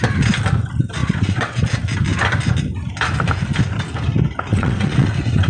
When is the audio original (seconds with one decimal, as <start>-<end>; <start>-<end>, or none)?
0.0-1.0; 1.6-4.5